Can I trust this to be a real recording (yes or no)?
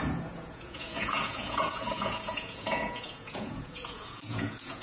no